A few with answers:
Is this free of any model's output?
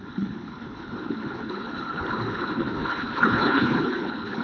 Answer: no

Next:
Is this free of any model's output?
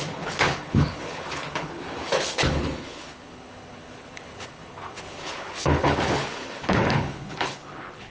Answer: no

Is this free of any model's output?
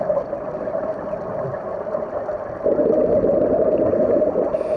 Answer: yes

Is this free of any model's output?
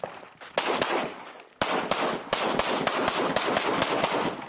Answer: yes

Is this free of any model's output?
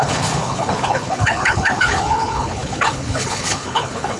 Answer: no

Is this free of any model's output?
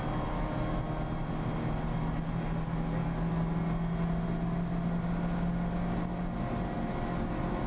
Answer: yes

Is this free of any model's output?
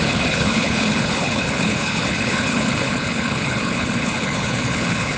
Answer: no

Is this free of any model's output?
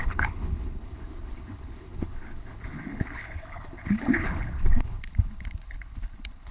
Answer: no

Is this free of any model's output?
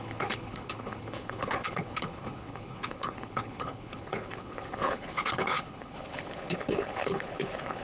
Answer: no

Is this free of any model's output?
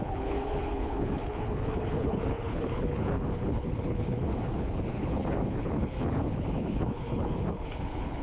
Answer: no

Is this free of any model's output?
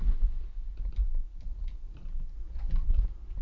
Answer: yes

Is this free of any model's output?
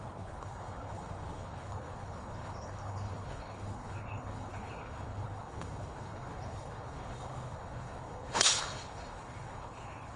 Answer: no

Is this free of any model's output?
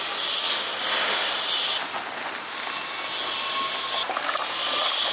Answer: yes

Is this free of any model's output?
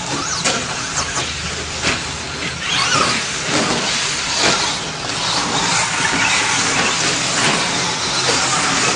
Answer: yes